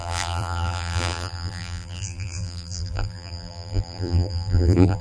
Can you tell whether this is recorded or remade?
remade